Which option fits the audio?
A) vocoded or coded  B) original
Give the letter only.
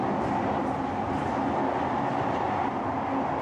B